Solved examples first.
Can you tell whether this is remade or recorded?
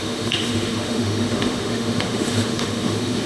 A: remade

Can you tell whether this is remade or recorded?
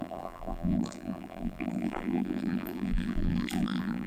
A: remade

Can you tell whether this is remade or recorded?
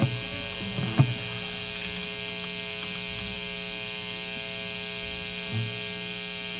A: recorded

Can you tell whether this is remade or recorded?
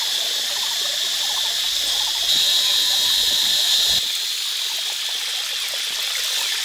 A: recorded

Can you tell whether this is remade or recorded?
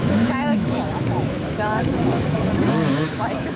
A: remade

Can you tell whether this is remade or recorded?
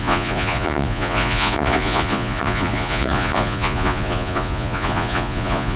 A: remade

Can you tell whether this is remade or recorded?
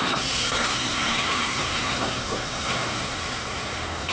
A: remade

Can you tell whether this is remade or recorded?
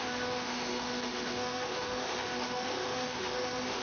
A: remade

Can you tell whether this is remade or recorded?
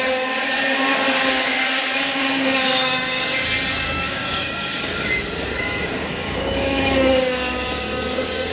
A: remade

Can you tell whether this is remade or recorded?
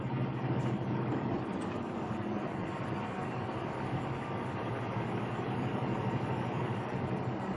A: remade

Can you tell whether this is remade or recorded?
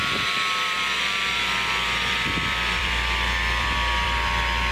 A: remade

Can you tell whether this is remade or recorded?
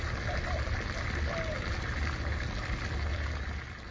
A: recorded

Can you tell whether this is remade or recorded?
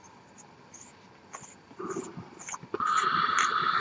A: recorded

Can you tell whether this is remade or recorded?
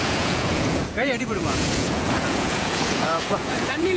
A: remade